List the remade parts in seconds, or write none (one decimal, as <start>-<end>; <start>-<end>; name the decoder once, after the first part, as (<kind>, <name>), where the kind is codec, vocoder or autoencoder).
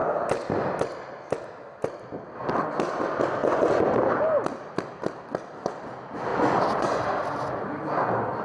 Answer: 3.4-3.9 (vocoder, Vocos); 6.3-7.0